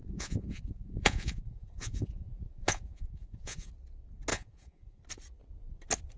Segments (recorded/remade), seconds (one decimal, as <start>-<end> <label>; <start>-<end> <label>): 0.0-3.7 remade; 3.7-4.3 recorded; 4.3-5.0 remade; 5.0-6.2 recorded